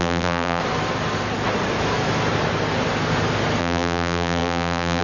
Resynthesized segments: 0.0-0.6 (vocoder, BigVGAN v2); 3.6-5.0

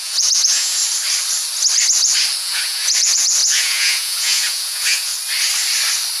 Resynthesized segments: 0.0-0.8 (vocoder, Vocos); 2.4-5.1

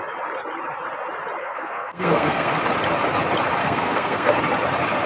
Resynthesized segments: 1.4-2.6 (codec, SNAC); 3.6-4.4